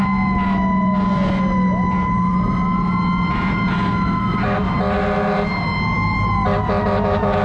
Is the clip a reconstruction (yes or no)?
no